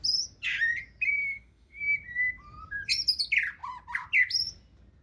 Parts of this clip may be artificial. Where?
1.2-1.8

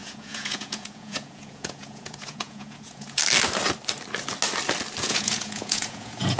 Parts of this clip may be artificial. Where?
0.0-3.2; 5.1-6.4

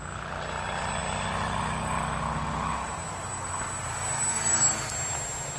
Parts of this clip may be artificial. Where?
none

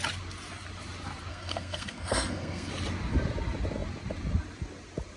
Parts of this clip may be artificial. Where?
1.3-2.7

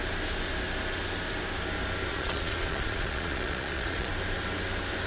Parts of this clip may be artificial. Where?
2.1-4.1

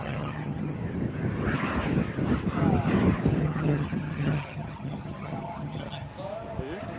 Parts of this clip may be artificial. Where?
0.0-0.8; 3.4-6.1

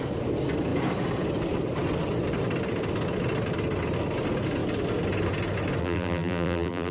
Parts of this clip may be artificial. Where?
5.8-6.9

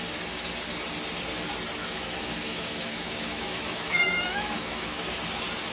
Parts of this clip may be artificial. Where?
1.8-5.1